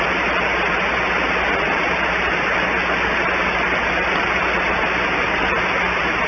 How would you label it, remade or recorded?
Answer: recorded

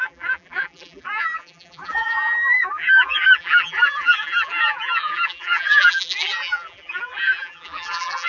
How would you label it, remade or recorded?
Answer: remade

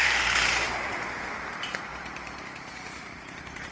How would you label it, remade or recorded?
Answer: remade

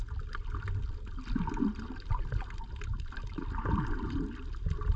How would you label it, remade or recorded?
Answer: recorded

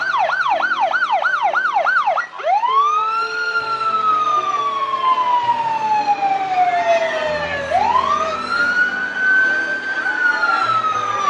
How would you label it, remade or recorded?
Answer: recorded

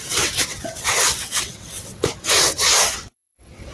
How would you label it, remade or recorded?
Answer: remade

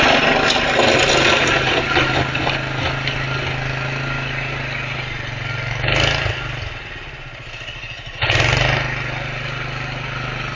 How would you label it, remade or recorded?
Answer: recorded